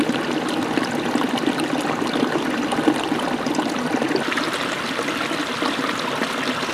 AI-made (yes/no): no